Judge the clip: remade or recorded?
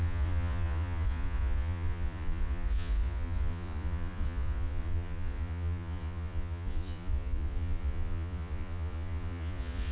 remade